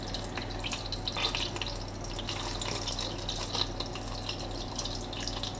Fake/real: real